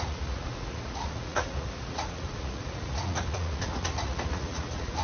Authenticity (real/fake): fake